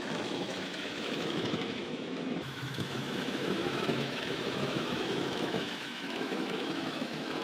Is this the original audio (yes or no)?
no